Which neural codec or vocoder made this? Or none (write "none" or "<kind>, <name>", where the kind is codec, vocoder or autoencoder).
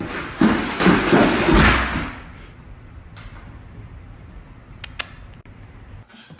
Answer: none